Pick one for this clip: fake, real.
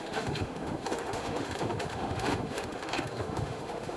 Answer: fake